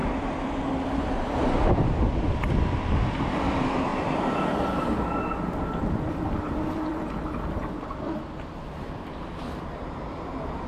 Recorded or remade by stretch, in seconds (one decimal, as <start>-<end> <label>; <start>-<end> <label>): 0.0-3.9 remade; 3.9-6.1 recorded; 6.1-10.7 remade